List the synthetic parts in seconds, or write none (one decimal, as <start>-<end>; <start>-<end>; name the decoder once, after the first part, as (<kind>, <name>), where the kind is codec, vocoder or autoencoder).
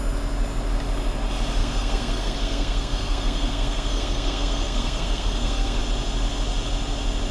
1.6-5.8 (codec, SNAC)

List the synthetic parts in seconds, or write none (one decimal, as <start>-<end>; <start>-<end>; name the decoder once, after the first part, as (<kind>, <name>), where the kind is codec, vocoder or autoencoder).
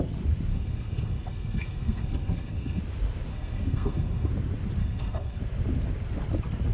0.5-2.8 (codec, SNAC); 3.3-4.3; 4.8-5.4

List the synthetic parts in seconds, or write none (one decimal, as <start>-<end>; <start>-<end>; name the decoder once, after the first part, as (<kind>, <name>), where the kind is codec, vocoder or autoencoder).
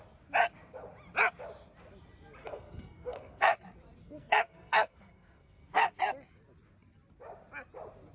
2.4-3.6 (codec, SNAC); 4.0-6.0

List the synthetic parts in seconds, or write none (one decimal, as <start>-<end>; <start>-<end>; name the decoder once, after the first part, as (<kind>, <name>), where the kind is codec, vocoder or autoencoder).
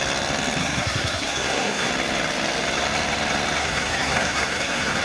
0.6-1.9 (codec, SNAC); 3.6-5.0